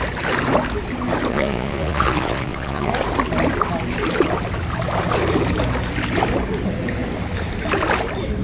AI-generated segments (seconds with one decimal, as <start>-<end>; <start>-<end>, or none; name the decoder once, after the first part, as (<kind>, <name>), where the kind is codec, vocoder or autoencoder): 1.3-2.9 (vocoder, Vocos)